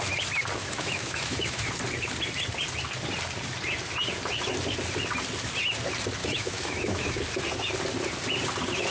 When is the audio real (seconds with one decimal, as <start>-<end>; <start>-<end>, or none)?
0.0-0.6; 1.7-6.2; 7.2-8.9

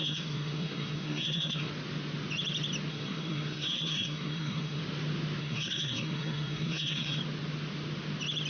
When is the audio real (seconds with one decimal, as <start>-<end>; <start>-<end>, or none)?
1.7-2.9; 4.8-5.4; 7.2-8.5